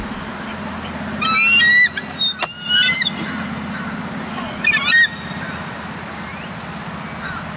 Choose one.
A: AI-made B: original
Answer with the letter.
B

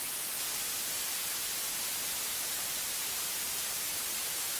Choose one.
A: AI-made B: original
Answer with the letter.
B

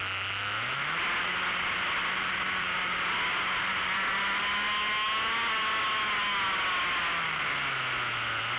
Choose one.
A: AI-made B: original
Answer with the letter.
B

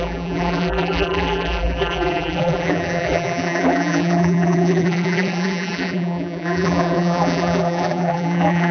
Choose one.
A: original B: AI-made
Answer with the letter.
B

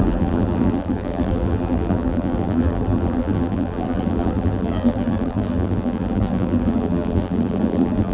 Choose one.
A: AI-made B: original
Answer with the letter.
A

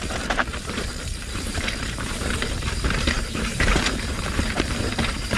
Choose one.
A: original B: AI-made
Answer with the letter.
B